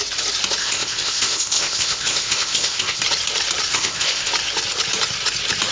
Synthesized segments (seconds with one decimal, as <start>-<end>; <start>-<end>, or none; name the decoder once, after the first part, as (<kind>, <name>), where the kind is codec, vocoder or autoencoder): 0.6-3.0 (codec, ZipCodec); 3.7-4.3